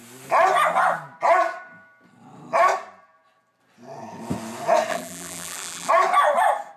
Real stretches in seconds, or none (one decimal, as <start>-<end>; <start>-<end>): 0.0-4.9; 5.9-6.8

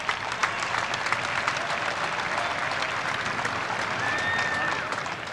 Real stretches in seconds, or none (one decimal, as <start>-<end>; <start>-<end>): 0.0-5.3

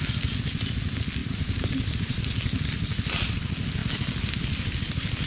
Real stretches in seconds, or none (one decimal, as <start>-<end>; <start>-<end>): 0.0-1.2; 2.2-5.3

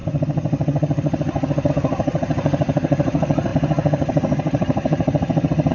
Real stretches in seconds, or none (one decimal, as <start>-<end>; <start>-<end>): none

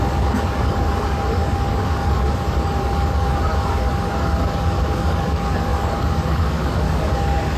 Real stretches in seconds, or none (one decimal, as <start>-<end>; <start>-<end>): none

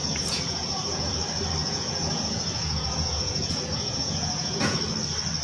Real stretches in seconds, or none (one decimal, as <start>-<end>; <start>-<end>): 1.1-1.6; 4.8-5.4

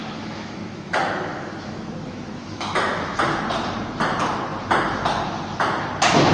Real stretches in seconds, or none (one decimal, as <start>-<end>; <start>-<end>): 3.2-6.3